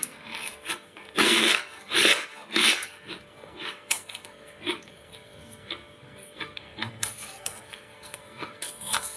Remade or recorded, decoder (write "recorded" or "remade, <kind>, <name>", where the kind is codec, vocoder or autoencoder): remade, codec, SNAC